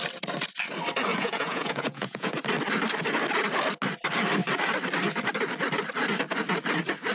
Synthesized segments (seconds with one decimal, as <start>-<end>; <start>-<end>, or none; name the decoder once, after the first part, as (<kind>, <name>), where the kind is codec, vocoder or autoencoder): 1.1-2.3 (vocoder, Vocos)